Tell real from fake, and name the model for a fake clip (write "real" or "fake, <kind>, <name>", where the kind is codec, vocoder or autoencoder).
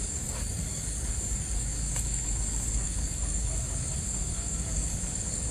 fake, codec, DAC